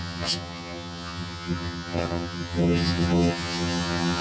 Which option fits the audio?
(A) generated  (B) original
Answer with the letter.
A